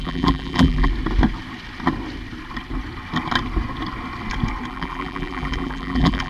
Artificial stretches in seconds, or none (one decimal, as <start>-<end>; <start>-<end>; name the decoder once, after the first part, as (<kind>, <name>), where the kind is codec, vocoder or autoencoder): 0.0-0.9 (vocoder, BigVGAN v2); 4.7-6.3

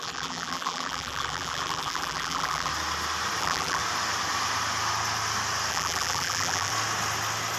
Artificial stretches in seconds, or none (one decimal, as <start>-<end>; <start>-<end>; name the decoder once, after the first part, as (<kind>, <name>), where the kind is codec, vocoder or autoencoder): 0.0-2.7 (vocoder, BigVGAN v2); 3.4-3.8; 5.7-6.7

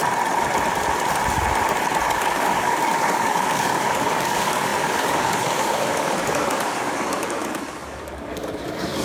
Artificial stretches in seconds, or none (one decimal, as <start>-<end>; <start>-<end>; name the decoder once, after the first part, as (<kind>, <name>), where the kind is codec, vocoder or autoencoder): 2.0-9.0 (codec, DAC)

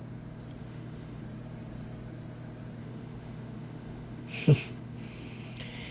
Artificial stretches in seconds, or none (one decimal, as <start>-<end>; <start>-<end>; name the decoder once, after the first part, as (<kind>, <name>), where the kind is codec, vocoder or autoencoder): 0.6-1.2 (autoencoder, DAC-VAE); 2.8-5.5